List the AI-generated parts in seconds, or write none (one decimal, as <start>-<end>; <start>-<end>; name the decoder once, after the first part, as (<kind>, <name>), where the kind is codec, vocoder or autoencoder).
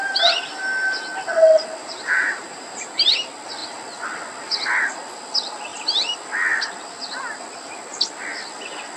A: 1.8-3.1 (vocoder, BigVGAN v2)